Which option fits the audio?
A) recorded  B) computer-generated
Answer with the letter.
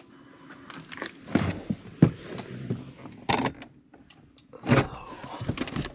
A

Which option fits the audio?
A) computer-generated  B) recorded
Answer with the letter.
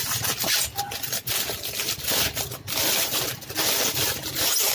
B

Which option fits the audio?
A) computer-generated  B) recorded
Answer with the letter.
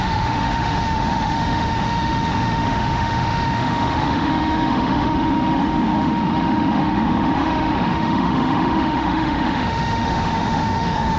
A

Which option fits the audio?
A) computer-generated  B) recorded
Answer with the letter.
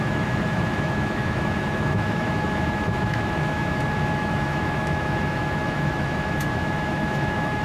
A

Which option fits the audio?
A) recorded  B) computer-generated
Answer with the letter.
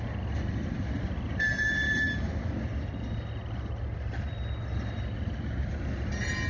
A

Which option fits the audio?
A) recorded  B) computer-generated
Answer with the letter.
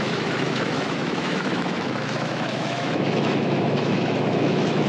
B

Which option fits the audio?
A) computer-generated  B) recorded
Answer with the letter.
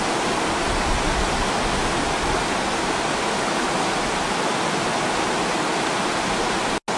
B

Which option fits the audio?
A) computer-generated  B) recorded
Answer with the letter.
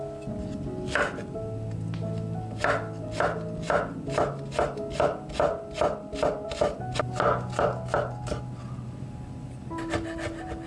B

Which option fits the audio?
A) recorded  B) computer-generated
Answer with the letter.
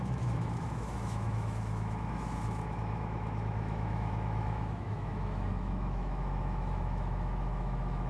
B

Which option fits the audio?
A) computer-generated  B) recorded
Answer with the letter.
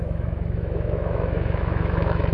A